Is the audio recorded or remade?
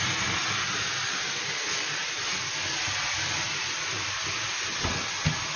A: recorded